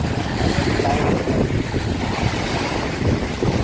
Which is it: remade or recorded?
recorded